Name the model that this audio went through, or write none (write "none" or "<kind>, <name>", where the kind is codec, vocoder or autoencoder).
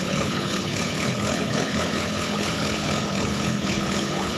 codec, HILCodec